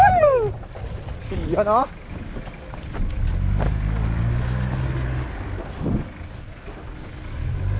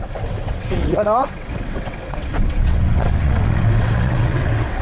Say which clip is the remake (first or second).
second